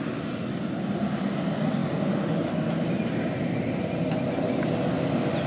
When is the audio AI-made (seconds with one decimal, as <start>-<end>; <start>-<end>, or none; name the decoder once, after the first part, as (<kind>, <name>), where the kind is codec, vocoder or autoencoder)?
none